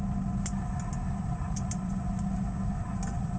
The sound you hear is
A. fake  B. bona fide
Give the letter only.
B